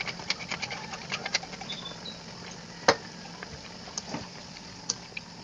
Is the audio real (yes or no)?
no